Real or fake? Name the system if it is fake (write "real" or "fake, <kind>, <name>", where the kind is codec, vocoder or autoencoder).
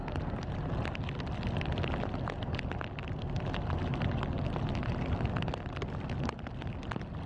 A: real